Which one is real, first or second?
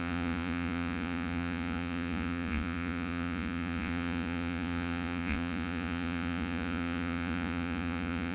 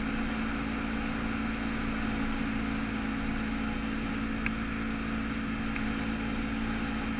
second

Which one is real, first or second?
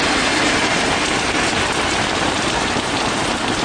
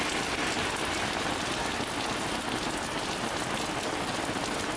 second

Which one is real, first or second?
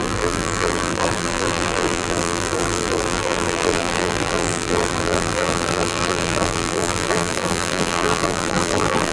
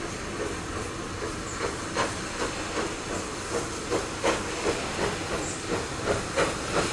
second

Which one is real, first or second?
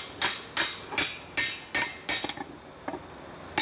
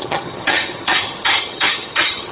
first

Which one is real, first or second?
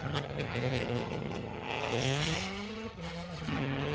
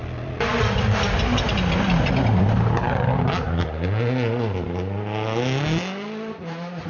second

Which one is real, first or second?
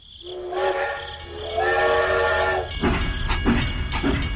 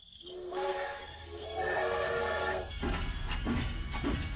first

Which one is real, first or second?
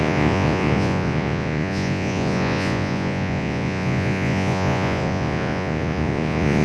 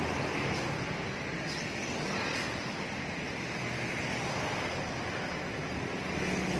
second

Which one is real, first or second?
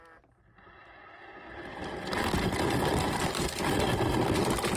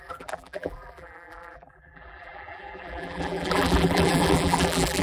first